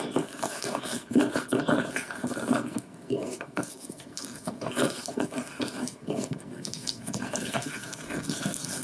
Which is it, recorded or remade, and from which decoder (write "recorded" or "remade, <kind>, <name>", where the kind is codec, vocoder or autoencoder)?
remade, codec, SNAC